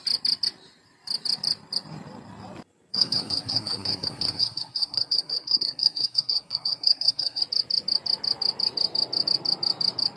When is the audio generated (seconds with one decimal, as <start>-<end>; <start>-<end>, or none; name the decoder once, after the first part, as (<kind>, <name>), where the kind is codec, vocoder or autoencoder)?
2.9-7.4 (codec, SNAC)